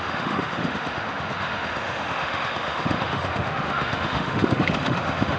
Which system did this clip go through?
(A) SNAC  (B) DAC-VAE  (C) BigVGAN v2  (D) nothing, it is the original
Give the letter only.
B